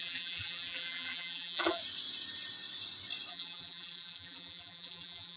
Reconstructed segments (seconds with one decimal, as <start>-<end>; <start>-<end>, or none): 0.0-1.8; 3.3-5.4